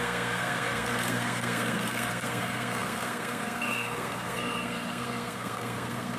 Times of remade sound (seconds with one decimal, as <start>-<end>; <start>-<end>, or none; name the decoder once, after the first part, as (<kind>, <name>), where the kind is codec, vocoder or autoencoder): 0.0-6.2 (codec, SNAC)